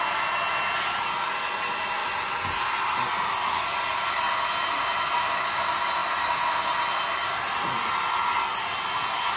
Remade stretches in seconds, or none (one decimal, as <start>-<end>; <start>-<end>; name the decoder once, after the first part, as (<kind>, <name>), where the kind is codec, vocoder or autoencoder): none